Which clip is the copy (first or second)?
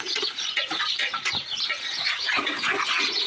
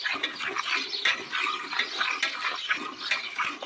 first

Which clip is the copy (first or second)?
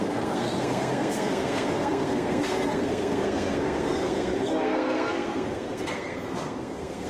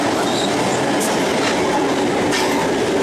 first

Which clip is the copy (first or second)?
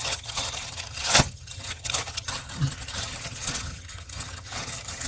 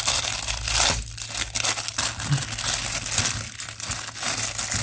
first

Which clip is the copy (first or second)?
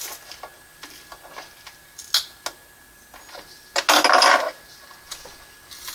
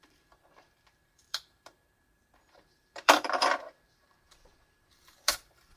second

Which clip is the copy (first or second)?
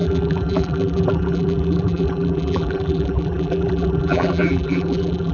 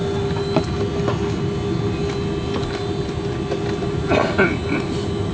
first